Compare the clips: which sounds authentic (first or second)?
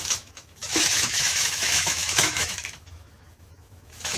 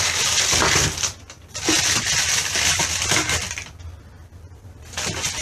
second